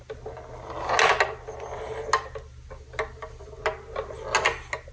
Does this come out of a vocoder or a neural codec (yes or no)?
no